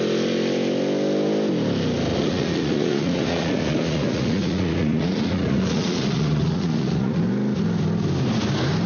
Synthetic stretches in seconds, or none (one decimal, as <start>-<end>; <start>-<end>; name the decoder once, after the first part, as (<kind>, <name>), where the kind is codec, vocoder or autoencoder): 2.1-7.2 (vocoder, Vocos)